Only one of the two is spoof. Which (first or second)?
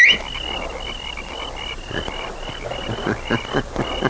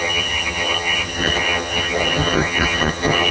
second